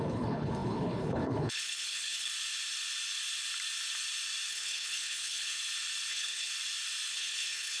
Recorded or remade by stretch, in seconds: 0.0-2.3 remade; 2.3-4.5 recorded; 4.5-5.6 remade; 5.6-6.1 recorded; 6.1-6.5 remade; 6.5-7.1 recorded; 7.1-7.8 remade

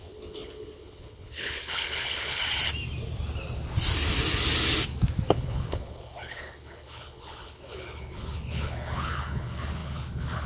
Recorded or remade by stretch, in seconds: 0.0-2.4 remade; 2.4-5.3 recorded; 5.3-10.5 remade